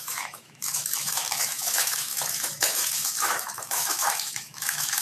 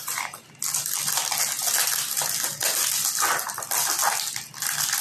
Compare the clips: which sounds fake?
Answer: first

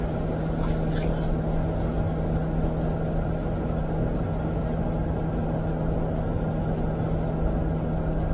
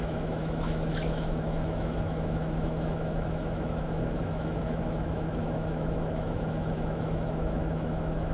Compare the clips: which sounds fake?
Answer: second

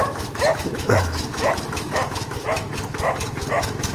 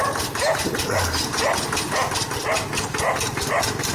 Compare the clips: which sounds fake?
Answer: first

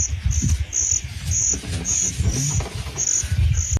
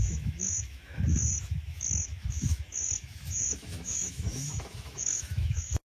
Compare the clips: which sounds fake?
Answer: second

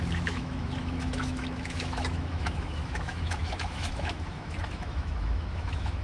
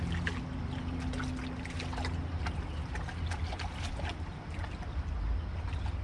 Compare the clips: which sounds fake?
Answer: first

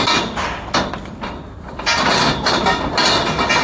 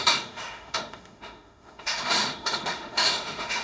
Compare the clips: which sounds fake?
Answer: second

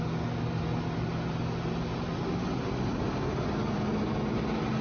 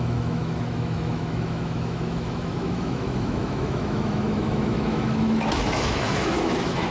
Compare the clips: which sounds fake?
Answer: second